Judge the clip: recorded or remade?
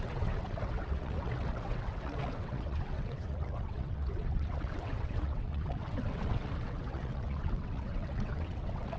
remade